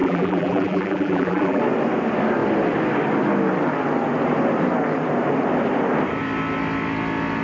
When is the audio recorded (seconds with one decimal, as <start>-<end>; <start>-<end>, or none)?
1.6-7.4